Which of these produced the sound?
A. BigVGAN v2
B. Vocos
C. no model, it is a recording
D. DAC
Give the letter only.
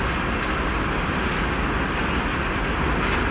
C